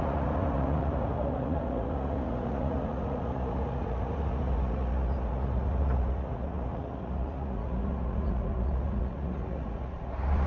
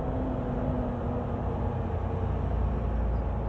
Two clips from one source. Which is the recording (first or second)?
second